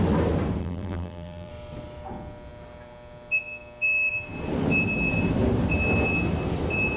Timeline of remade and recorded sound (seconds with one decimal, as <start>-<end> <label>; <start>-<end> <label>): 0.0-0.6 recorded; 0.6-1.5 remade; 1.5-7.0 recorded